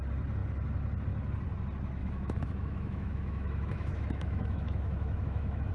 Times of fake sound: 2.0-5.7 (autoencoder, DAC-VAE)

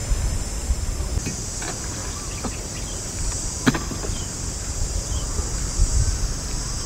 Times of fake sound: 2.0-5.0 (vocoder, BigVGAN v2); 5.8-6.9

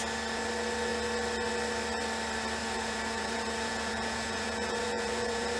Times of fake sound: 2.6-5.6 (vocoder, Vocos)

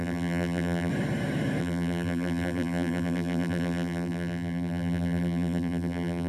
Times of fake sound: 0.0-0.9 (vocoder, BigVGAN v2); 1.6-6.3

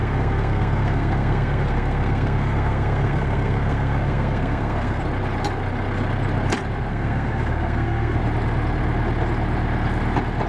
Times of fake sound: 0.0-5.0 (codec, SNAC); 6.9-8.2